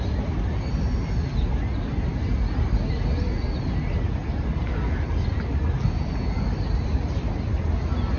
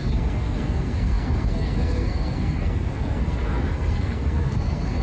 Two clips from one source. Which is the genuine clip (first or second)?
first